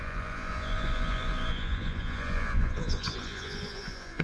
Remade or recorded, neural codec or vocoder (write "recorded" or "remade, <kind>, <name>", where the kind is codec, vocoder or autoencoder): remade, vocoder, Vocos